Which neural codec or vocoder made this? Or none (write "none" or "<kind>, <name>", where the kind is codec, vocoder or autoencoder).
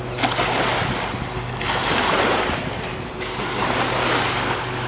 none